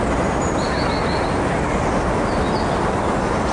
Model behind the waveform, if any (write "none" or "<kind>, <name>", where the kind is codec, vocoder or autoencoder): none